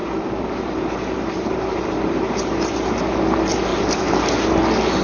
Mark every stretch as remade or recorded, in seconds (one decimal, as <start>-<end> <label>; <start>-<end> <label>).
0.0-3.0 remade; 3.0-3.7 recorded; 3.7-4.4 remade; 4.4-5.0 recorded